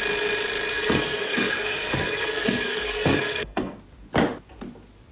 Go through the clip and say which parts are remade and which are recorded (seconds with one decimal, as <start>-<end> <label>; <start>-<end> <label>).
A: 0.0-0.7 recorded; 0.7-3.8 remade; 3.8-5.1 recorded